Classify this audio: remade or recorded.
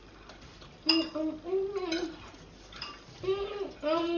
remade